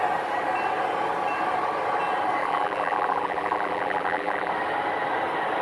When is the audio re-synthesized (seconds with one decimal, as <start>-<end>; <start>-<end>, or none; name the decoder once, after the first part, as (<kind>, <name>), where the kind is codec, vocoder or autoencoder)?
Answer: 2.4-4.5 (vocoder, BigVGAN v2)